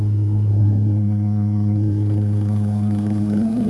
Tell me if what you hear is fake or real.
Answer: fake